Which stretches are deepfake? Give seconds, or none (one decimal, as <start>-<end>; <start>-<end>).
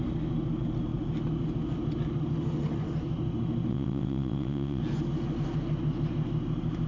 3.7-4.8